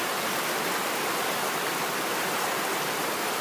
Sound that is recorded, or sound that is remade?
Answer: remade